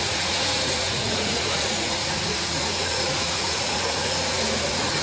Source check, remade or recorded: remade